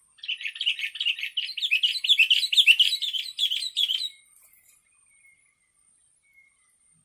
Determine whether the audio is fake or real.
fake